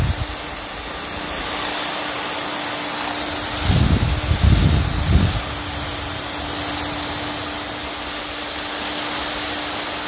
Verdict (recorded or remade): recorded